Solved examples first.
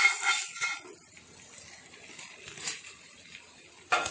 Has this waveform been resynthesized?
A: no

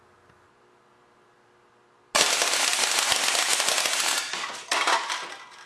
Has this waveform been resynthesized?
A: no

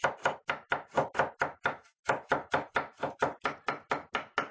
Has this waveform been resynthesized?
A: no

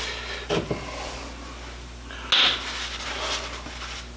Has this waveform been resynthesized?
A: no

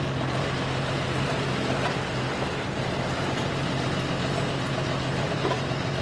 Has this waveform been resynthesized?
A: no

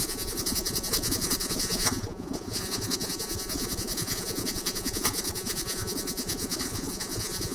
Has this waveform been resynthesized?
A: yes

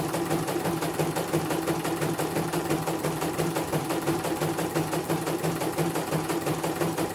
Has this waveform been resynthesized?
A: yes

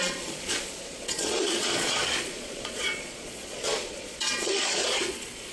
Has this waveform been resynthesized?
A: yes